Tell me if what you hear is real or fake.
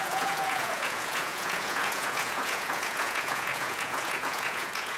fake